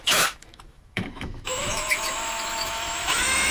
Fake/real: fake